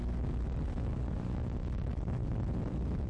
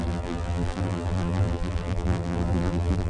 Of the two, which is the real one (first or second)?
first